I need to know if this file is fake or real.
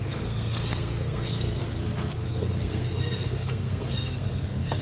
fake